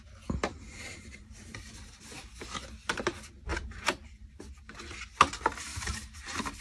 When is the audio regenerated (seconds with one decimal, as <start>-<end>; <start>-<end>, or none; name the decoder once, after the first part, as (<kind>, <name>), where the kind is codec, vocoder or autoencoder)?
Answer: 0.7-2.0 (vocoder, BigVGAN v2); 3.5-4.4; 5.7-6.6